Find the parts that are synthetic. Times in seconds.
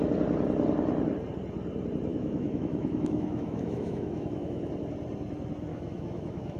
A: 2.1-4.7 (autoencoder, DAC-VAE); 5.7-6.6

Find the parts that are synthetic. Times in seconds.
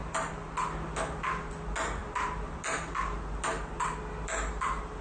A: none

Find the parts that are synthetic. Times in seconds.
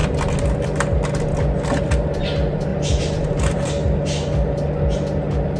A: 2.7-3.7 (vocoder, BigVGAN v2)